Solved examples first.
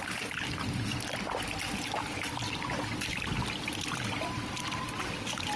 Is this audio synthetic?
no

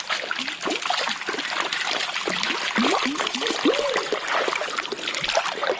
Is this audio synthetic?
no